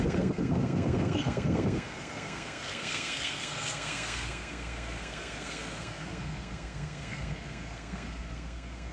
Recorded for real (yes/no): no